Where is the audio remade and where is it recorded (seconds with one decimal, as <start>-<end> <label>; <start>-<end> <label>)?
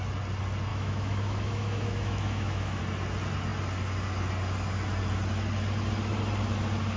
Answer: 0.0-0.7 recorded; 0.7-2.8 remade; 2.8-7.0 recorded